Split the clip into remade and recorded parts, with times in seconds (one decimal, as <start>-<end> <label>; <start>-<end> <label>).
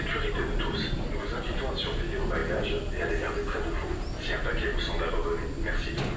0.0-6.2 recorded